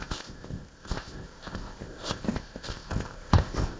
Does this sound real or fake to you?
fake